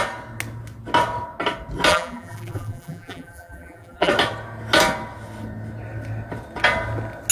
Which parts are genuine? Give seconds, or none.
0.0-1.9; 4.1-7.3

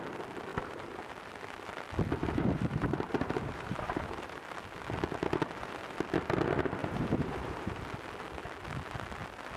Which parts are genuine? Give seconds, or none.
0.0-0.5; 1.1-2.2; 4.4-6.8; 7.8-9.6

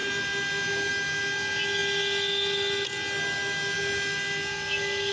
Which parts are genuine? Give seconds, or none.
0.0-5.1

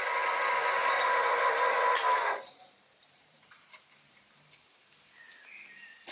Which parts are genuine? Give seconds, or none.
0.0-0.8; 4.5-6.1

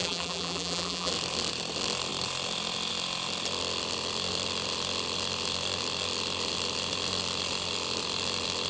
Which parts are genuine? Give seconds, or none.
1.1-8.7

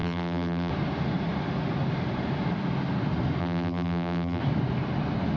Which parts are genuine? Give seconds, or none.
0.7-3.4; 4.4-5.4

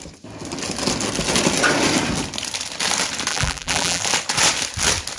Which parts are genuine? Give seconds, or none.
0.0-3.3; 4.0-5.2